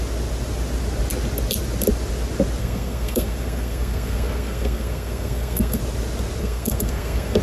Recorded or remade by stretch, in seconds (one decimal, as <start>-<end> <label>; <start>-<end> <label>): 0.0-2.6 recorded; 2.6-5.8 remade; 5.8-6.4 recorded; 6.4-7.4 remade